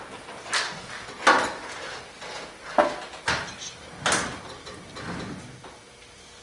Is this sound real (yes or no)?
yes